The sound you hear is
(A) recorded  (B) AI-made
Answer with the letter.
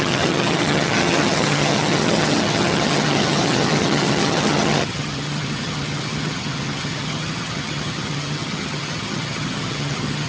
B